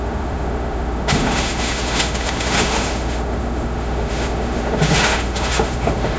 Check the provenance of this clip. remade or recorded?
remade